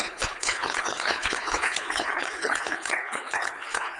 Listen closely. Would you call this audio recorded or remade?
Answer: remade